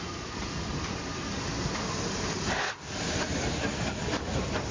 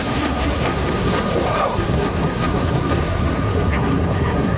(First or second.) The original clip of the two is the first